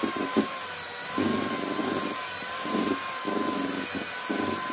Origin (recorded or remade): recorded